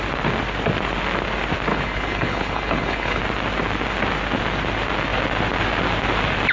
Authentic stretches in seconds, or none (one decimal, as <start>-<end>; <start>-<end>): 0.0-1.7; 3.2-6.5